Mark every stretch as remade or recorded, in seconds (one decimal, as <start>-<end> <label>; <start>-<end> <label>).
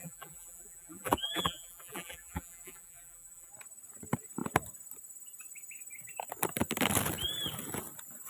0.0-3.5 remade; 3.5-8.3 recorded